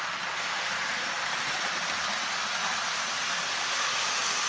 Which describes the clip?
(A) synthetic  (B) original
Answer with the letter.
B